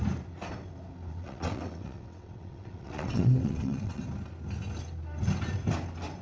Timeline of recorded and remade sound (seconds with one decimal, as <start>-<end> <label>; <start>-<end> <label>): 0.0-1.1 recorded; 1.1-4.0 remade; 4.0-6.2 recorded